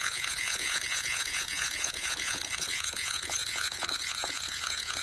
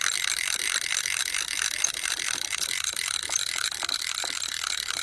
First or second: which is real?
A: second